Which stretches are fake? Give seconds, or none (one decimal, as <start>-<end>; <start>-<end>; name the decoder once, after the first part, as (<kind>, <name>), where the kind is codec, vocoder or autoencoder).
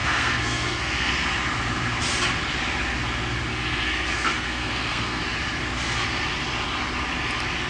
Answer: 0.0-1.1 (codec, SNAC); 3.5-5.2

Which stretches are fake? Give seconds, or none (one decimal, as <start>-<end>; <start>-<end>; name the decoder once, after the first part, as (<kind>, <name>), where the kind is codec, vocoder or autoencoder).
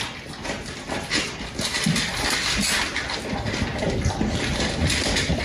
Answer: none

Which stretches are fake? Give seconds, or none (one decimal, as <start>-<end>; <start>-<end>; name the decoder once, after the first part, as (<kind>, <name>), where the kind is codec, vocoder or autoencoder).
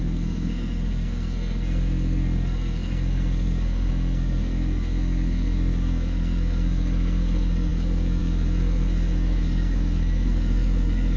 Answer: 0.0-11.2 (codec, SNAC)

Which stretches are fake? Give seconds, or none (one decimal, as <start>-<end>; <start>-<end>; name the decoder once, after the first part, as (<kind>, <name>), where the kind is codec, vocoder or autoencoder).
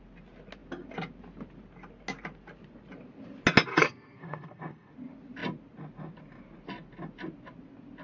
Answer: 3.7-4.9 (codec, SNAC)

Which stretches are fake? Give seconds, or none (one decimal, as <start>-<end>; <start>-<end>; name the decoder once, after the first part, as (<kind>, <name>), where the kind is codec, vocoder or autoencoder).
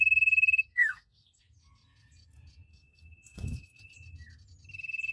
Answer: 0.7-1.4 (codec, SNAC); 2.7-3.8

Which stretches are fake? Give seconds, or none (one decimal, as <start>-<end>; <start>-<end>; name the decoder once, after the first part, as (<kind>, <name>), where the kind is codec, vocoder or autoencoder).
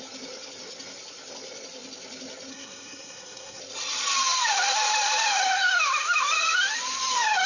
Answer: 2.5-3.6 (codec, SNAC)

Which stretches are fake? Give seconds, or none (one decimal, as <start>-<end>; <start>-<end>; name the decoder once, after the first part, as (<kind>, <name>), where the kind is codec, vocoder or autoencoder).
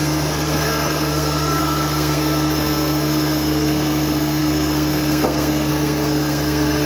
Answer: 0.0-6.9 (codec, SNAC)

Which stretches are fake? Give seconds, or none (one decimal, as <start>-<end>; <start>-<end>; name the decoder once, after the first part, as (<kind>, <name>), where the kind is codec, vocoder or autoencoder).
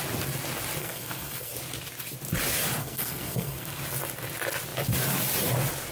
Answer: 0.8-1.5 (codec, SNAC); 2.8-3.7